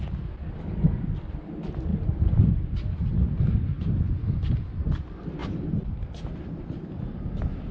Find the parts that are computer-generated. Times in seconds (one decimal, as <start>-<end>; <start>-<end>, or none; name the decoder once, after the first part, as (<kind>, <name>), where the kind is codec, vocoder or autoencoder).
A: 5.4-7.3 (vocoder, BigVGAN v2)

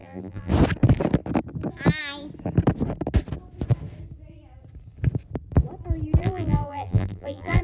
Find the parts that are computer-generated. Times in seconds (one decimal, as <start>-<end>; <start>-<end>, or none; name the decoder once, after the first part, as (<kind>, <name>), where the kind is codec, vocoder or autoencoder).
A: 0.0-0.5 (vocoder, BigVGAN v2); 6.2-7.6

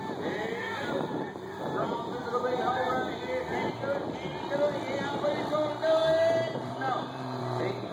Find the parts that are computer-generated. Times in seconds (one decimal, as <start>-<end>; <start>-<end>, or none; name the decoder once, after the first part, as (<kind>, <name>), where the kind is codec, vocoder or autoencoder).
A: 0.6-3.1 (vocoder, BigVGAN v2); 6.0-7.4